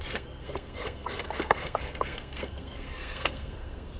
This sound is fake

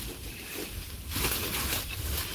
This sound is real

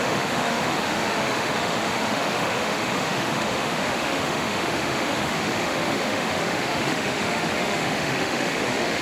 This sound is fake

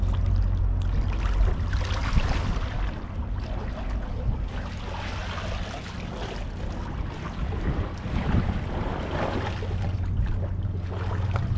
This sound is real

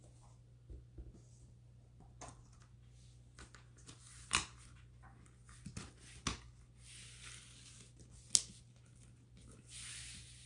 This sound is real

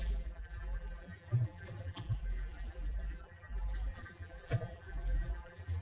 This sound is fake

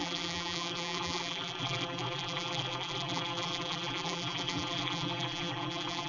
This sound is fake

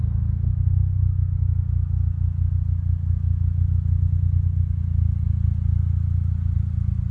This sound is real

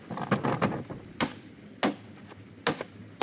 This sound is real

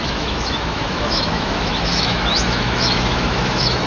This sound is fake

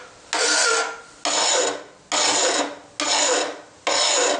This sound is real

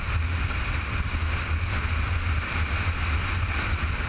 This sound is real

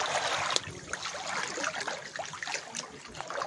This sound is real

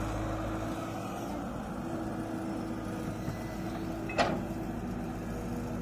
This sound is real